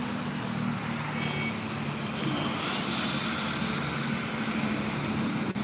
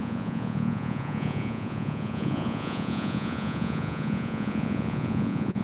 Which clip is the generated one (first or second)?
second